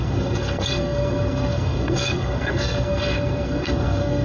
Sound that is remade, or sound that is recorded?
remade